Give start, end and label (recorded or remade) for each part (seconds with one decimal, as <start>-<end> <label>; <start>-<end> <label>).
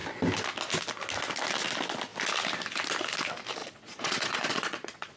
0.0-3.6 recorded; 3.6-5.2 remade